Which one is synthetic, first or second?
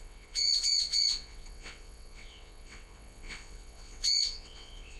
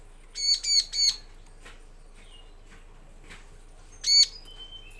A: first